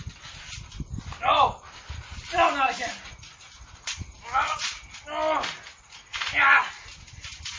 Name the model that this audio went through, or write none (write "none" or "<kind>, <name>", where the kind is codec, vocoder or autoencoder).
none